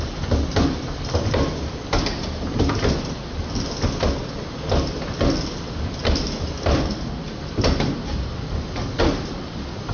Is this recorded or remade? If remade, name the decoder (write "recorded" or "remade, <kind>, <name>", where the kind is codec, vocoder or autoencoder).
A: recorded